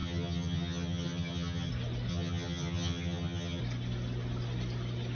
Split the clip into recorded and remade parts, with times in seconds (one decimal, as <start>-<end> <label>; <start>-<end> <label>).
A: 0.0-1.7 remade; 1.7-2.1 recorded; 2.1-3.6 remade; 3.6-5.1 recorded